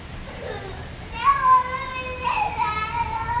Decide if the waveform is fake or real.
real